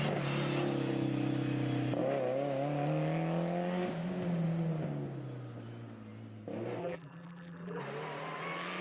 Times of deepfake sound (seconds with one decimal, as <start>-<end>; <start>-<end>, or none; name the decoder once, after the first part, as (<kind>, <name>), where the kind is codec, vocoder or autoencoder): 6.8-7.8 (vocoder, BigVGAN v2)